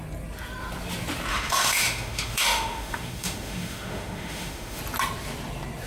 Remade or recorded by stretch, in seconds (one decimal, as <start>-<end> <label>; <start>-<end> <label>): 0.0-1.3 recorded; 1.3-4.8 remade; 4.8-5.9 recorded